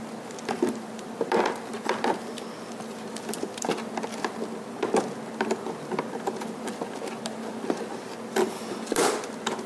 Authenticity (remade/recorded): recorded